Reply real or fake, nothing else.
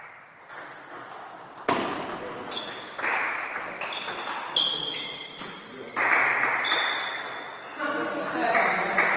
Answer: real